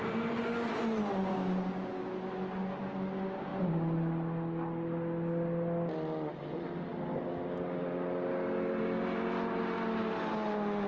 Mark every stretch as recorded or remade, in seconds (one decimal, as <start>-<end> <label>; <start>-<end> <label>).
0.0-1.3 recorded; 1.3-2.0 remade; 2.0-10.9 recorded